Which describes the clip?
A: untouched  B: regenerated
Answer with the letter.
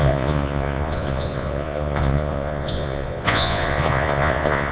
B